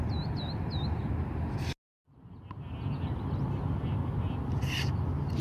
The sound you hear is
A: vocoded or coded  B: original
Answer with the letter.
B